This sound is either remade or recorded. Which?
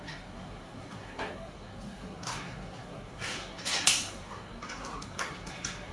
remade